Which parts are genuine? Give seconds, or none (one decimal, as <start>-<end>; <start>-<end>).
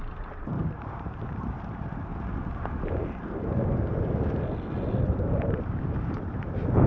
2.1-5.0